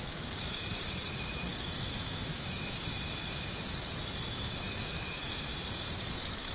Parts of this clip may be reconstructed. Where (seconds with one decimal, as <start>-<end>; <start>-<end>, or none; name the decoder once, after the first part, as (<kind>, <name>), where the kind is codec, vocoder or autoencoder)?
0.0-2.9 (autoencoder, DAC-VAE); 4.3-5.5; 6.1-6.5